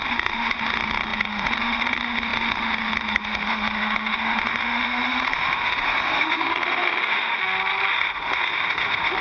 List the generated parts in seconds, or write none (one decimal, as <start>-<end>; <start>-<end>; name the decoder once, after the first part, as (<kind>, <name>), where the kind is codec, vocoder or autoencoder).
0.0-7.4 (autoencoder, DAC-VAE); 7.9-9.2